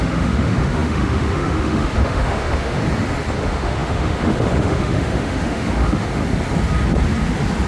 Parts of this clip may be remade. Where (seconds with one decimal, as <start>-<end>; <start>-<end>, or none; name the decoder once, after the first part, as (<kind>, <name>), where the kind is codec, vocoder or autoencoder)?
0.0-2.8 (autoencoder, DAC-VAE); 3.4-6.2